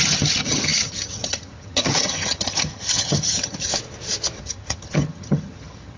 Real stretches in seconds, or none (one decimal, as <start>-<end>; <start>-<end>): 3.7-4.4